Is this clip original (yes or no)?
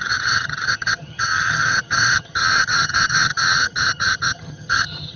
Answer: no